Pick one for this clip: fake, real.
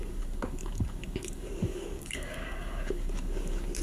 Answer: fake